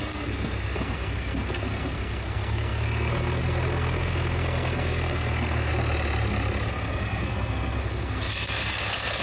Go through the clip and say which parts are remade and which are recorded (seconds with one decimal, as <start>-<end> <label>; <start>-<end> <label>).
0.0-5.7 remade; 5.7-6.7 recorded; 6.7-9.2 remade